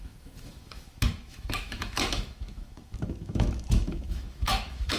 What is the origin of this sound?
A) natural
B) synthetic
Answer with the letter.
B